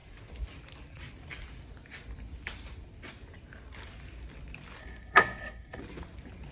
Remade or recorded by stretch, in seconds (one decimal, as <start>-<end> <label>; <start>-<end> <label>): 0.0-4.8 recorded; 4.8-5.8 remade; 5.8-6.5 recorded